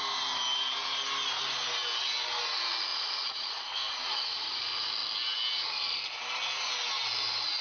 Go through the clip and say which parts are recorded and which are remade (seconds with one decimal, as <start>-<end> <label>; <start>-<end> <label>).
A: 0.0-2.9 recorded; 2.9-4.6 remade; 4.6-7.6 recorded